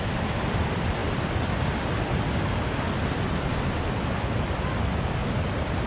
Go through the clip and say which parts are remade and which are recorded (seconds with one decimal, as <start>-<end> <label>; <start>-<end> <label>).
0.0-5.9 recorded